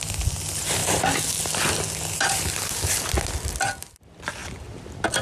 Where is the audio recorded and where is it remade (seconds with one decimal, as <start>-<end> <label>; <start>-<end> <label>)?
0.0-5.2 recorded